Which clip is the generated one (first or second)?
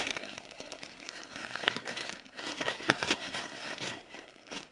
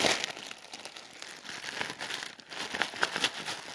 first